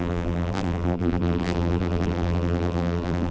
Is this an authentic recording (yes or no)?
no